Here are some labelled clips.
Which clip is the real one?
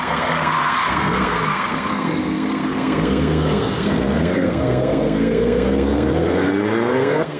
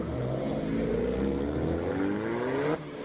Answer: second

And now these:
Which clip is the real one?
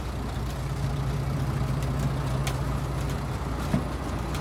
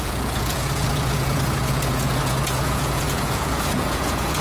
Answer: first